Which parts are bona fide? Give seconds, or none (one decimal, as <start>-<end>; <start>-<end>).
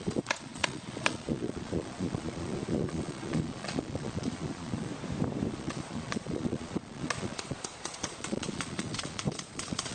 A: 4.9-5.5